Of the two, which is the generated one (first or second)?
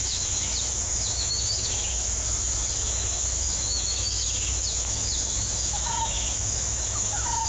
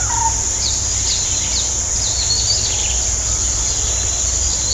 first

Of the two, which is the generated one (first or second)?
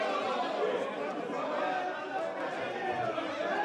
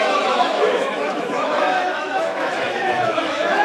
second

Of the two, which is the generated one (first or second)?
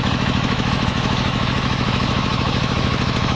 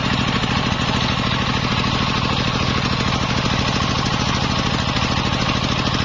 first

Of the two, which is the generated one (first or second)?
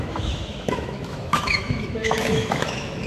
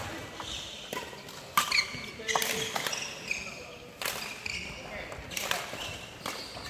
first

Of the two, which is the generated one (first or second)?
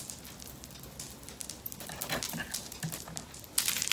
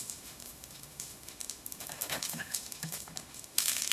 second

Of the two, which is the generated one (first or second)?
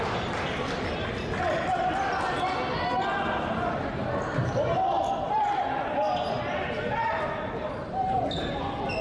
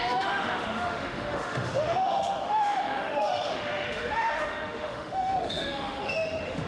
second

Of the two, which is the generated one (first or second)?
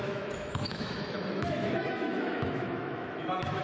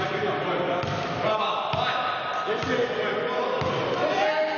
first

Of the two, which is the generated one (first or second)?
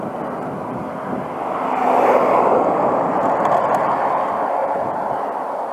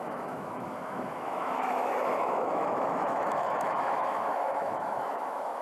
second